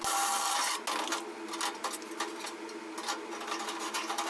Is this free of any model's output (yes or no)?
yes